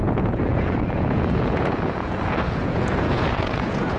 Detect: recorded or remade remade